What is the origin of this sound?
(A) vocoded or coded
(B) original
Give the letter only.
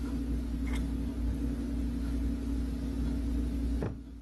B